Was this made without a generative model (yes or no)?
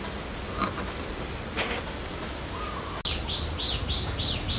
yes